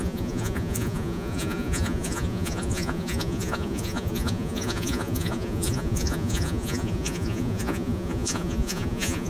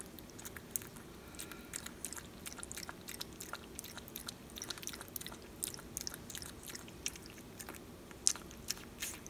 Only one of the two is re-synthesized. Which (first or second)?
first